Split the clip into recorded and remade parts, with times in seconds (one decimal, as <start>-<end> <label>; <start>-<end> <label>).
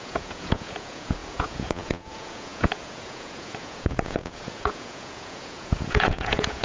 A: 0.0-6.6 remade